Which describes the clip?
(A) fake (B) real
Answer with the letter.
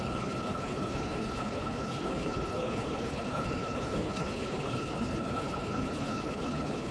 A